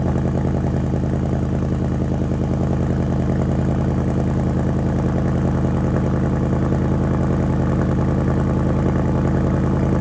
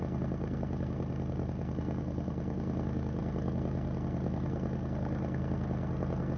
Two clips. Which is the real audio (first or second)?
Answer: first